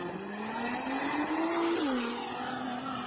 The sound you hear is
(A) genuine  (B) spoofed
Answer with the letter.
A